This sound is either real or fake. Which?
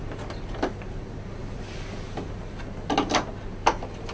real